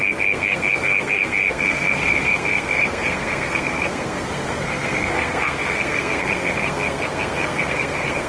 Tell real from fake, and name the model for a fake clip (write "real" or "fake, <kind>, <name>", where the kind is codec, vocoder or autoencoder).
fake, codec, SNAC